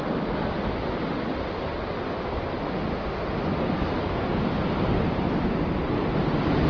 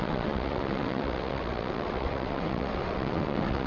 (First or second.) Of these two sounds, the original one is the first